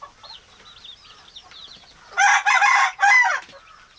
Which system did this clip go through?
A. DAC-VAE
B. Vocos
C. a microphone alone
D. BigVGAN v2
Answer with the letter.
C